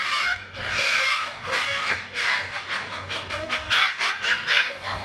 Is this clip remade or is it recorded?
remade